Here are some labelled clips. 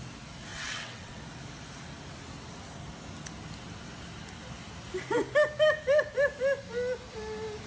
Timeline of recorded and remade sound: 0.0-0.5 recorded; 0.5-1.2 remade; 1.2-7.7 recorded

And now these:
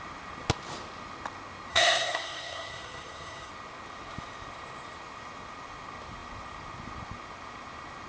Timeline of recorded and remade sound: 0.0-1.7 recorded; 1.7-3.5 remade; 3.5-8.1 recorded

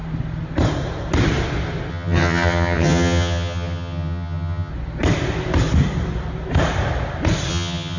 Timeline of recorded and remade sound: 0.0-1.9 recorded; 1.9-4.7 remade; 4.7-7.5 recorded; 7.5-8.0 remade